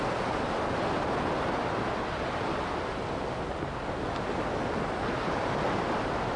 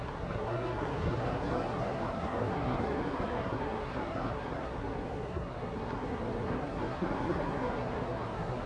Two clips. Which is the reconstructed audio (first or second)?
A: second